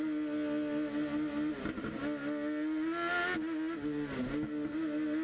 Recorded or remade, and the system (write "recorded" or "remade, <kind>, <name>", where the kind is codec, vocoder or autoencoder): recorded